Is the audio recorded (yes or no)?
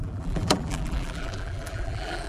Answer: no